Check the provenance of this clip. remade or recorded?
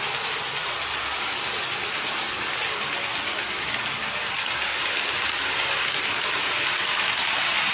recorded